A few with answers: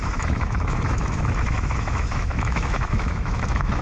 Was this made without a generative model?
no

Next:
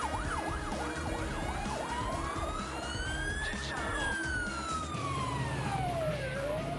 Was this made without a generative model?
no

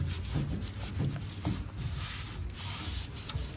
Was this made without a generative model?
yes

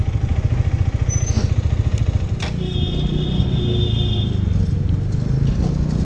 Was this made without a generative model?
yes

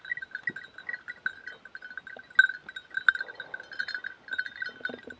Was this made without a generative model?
yes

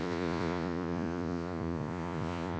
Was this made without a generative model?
no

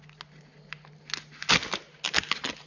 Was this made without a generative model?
yes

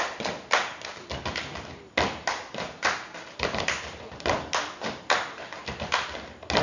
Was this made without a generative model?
yes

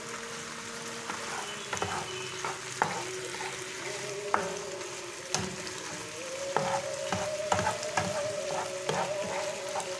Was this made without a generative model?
yes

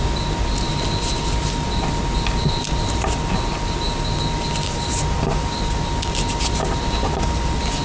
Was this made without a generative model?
yes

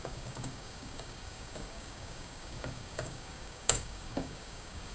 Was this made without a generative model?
no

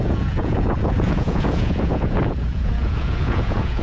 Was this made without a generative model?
no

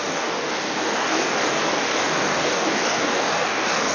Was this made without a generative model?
no